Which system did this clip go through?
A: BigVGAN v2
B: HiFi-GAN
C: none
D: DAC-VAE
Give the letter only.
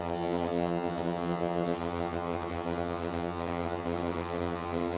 B